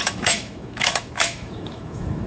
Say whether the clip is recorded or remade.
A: remade